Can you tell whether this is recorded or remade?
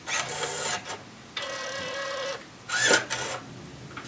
recorded